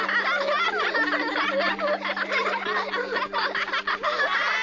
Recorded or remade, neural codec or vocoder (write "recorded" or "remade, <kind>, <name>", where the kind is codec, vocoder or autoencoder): recorded